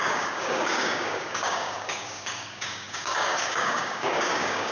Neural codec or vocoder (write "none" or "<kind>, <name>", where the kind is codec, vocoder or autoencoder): codec, DAC